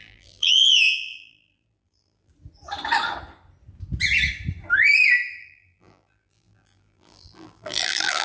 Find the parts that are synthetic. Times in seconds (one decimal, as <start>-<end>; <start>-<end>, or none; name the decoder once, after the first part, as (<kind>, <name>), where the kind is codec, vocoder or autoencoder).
0.0-2.3 (vocoder, BigVGAN v2); 5.4-8.2